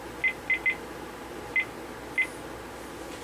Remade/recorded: recorded